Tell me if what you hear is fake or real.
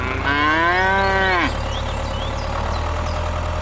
real